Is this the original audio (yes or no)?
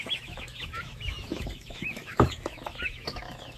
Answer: no